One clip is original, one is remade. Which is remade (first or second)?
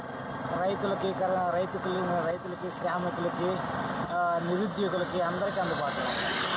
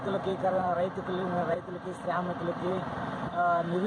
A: second